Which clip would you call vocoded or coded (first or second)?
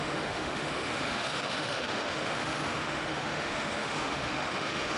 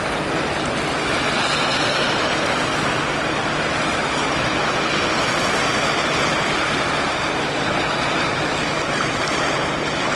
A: first